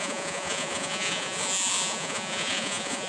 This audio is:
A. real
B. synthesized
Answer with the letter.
B